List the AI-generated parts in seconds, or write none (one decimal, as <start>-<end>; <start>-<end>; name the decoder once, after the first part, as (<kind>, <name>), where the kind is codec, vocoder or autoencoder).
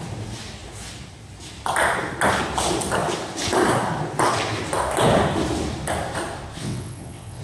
6.6-7.4 (vocoder, WaveNeXt)